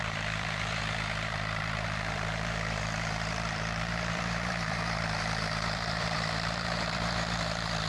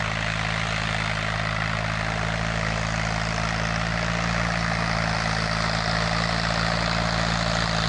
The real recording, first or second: second